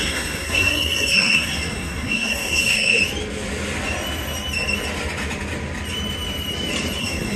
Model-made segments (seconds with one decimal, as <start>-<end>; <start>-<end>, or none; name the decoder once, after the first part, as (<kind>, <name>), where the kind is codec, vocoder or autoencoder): 0.0-3.0 (codec, SNAC); 7.0-7.4